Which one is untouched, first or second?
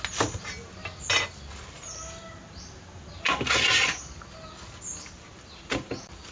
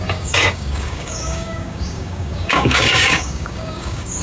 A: first